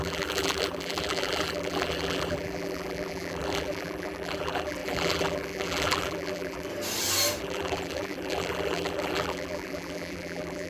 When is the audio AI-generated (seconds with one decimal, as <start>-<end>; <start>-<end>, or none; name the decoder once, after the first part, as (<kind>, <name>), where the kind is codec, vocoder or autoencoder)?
0.0-6.7 (vocoder, BigVGAN v2); 7.4-10.7

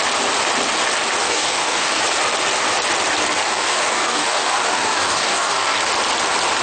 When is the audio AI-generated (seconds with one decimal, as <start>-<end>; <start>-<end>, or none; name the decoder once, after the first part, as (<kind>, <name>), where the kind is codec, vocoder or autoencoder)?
1.2-2.0 (codec, DAC); 3.4-5.8

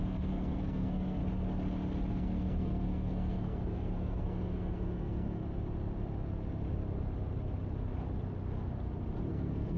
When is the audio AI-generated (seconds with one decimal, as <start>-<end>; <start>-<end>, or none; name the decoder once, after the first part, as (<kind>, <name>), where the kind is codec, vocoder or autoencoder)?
0.0-1.2 (codec, SNAC); 2.1-5.4; 9.3-9.8

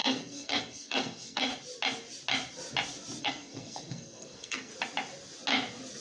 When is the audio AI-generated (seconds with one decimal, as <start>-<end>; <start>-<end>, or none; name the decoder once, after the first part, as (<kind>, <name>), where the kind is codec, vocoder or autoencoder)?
0.0-1.5 (codec, SNAC); 3.2-4.7

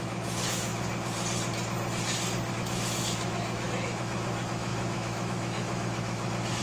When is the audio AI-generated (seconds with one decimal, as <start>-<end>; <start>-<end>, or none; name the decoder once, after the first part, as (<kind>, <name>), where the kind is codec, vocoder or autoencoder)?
0.0-0.7 (autoencoder, DAC-VAE); 2.5-6.6

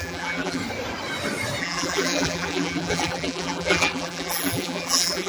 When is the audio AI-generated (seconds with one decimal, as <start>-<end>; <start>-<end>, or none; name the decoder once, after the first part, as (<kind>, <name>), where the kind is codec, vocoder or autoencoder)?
0.0-0.6 (vocoder, BigVGAN v2); 1.6-5.3

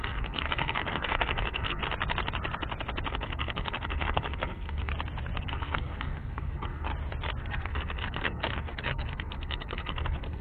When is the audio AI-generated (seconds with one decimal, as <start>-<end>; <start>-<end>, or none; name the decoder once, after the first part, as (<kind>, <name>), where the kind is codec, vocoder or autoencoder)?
0.0-1.8 (codec, SNAC); 3.1-4.9; 5.4-6.9; 7.4-10.4

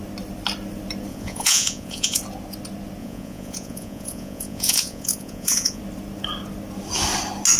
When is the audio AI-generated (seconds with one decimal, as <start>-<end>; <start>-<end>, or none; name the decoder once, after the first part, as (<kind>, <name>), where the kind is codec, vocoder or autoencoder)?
1.1-2.2 (vocoder, Vocos); 3.0-5.8